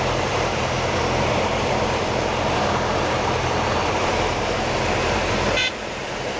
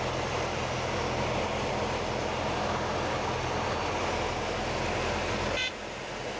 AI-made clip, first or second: first